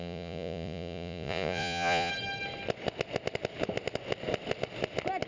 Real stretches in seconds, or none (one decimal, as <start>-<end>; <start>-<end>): 2.1-5.3

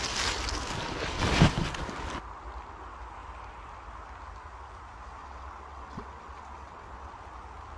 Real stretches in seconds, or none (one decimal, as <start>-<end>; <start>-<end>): 0.0-5.2; 7.1-7.8

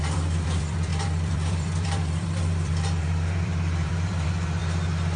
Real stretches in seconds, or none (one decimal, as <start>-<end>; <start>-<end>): 4.6-5.2

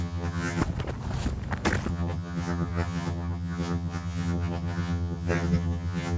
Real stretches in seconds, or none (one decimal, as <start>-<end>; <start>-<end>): 0.6-1.9

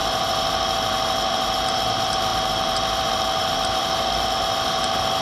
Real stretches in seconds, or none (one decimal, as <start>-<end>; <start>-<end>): none

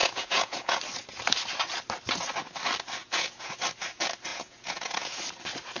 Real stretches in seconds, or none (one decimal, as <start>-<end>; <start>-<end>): 0.8-3.0; 3.5-4.3; 5.2-5.8